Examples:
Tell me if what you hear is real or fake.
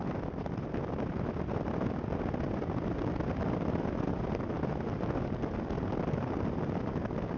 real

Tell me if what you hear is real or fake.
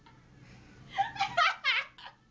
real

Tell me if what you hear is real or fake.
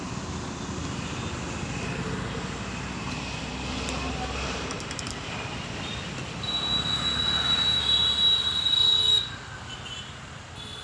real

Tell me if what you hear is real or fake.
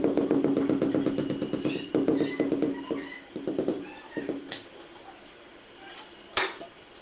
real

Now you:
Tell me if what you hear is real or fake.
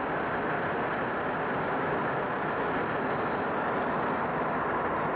real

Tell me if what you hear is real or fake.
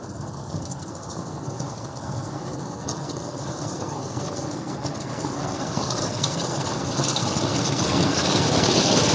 fake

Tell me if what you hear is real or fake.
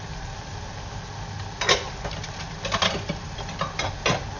real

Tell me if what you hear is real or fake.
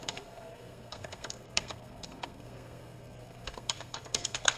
fake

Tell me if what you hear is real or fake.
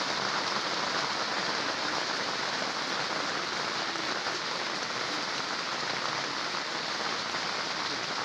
real